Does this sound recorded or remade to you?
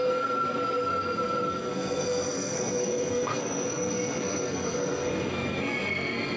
remade